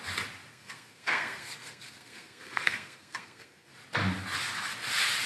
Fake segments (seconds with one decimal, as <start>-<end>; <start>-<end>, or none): 0.5-3.7